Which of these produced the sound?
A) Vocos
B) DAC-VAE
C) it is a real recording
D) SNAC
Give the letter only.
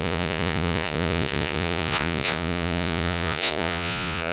A